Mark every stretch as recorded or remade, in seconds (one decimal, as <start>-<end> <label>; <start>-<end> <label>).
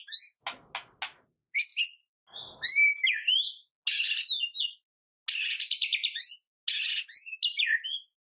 0.0-8.3 recorded